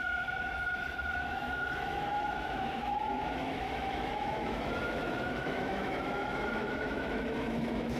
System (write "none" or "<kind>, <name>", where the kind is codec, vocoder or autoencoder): autoencoder, DAC-VAE